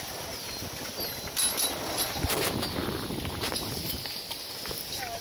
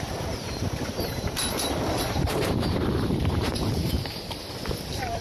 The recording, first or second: first